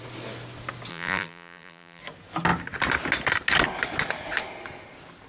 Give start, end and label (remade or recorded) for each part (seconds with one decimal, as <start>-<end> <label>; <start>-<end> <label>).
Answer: 0.0-0.9 recorded; 0.9-2.0 remade; 2.0-5.3 recorded